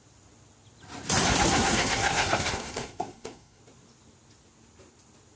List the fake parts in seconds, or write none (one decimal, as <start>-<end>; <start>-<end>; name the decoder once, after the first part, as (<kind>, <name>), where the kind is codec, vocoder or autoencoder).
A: 1.5-3.6 (codec, SNAC)